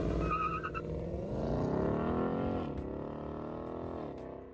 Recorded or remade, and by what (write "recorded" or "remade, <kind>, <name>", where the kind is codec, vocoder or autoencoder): recorded